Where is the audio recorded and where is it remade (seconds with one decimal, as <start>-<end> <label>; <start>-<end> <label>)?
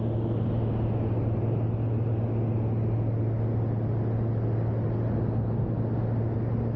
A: 0.0-6.8 recorded